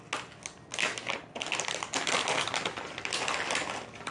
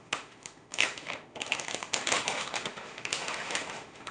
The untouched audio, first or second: first